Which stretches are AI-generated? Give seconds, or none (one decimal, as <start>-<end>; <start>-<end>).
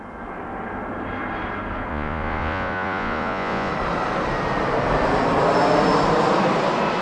1.9-3.7